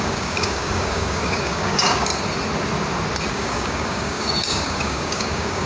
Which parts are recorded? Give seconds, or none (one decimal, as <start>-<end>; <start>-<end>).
2.1-3.3